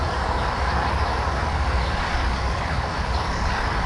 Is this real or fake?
fake